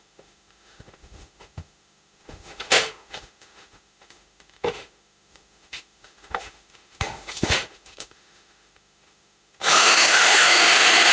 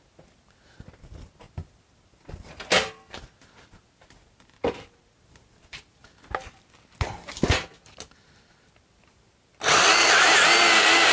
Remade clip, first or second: first